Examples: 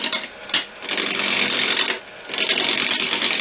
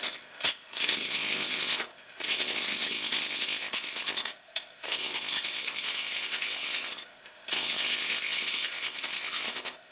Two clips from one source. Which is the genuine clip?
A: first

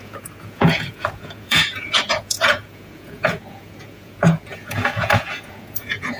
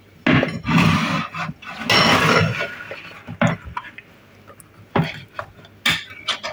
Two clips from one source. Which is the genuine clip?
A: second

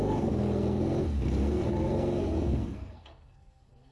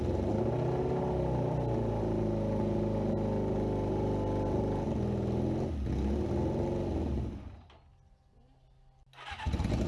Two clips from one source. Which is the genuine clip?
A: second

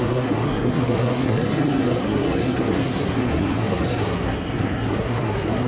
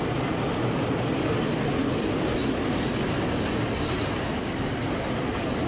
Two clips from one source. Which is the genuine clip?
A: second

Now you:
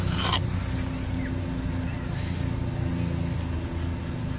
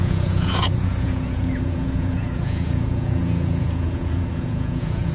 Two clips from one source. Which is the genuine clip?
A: first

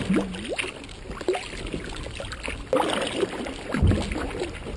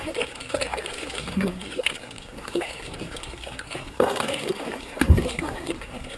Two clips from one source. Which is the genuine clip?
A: first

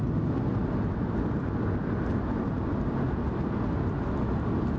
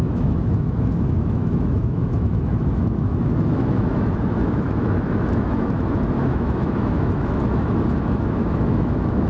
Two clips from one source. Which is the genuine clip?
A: first